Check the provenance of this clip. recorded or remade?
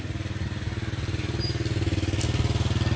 recorded